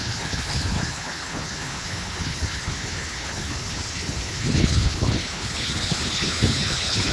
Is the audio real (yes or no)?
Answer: no